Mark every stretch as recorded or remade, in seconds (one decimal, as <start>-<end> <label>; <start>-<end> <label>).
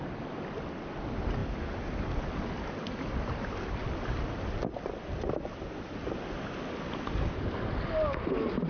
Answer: 0.0-8.7 recorded